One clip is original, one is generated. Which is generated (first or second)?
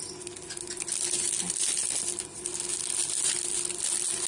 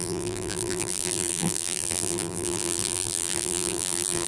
second